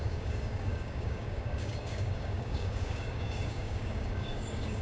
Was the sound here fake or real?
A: fake